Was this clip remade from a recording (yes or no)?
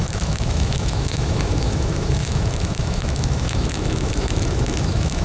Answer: yes